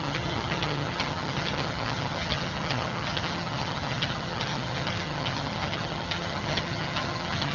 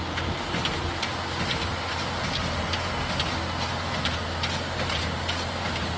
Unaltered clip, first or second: second